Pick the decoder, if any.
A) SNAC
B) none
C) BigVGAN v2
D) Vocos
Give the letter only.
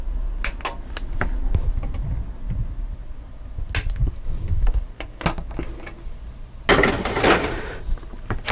B